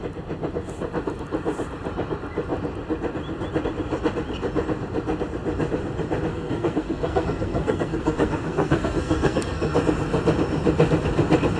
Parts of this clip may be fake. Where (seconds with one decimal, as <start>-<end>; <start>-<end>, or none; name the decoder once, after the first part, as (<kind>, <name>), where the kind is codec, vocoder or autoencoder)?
6.3-9.7 (codec, SNAC)